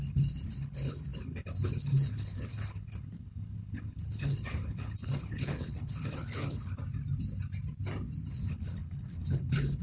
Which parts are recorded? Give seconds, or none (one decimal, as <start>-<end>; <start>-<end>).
6.8-8.3